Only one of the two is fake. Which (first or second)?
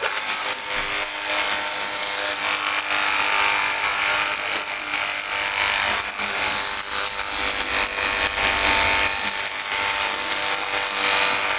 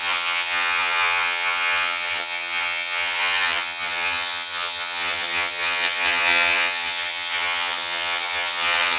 second